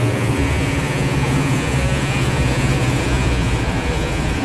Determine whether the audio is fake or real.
fake